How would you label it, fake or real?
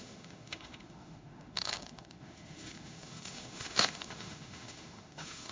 fake